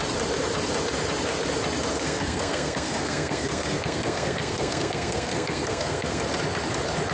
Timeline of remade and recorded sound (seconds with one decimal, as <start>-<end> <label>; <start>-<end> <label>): 0.0-1.9 recorded; 1.9-6.2 remade; 6.2-7.1 recorded